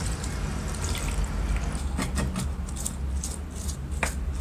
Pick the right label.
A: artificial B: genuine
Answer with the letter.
B